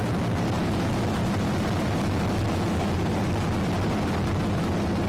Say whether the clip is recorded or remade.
recorded